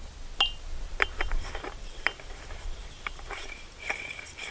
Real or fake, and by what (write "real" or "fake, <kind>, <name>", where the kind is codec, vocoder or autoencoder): real